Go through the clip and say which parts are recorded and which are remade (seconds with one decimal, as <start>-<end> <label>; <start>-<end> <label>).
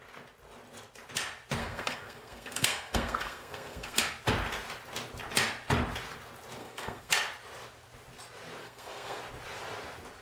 0.0-1.6 recorded; 1.6-4.0 remade; 4.0-6.6 recorded; 6.6-7.1 remade; 7.1-8.6 recorded; 8.6-9.2 remade; 9.2-10.2 recorded